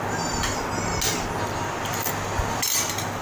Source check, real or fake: real